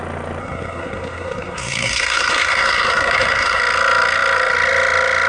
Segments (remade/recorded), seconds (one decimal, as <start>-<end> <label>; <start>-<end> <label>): 0.0-0.4 recorded; 0.4-3.6 remade; 3.6-5.3 recorded